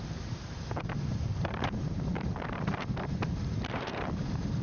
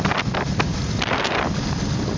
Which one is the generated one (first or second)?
first